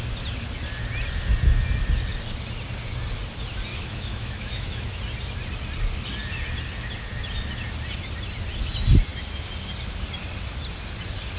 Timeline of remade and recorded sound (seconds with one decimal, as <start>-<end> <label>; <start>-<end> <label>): 0.0-3.7 recorded; 3.7-5.0 remade; 5.0-11.4 recorded